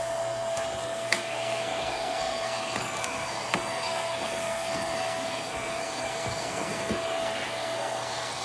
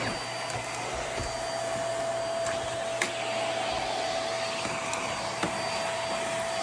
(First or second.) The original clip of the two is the second